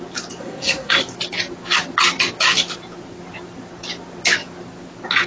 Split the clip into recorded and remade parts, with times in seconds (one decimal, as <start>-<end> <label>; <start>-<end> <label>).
0.0-0.4 recorded; 0.4-1.0 remade; 1.0-5.3 recorded